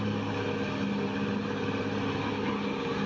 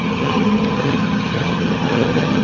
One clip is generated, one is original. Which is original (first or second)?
first